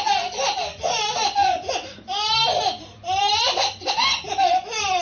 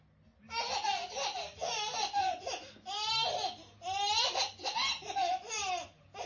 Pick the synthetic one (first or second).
first